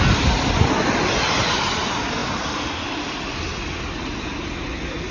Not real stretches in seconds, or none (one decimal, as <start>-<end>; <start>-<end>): none